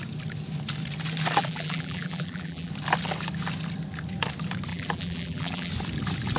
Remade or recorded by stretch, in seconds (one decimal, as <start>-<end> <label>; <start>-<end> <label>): 0.0-1.4 recorded; 1.4-2.7 remade; 2.7-4.7 recorded; 4.7-5.7 remade; 5.7-6.4 recorded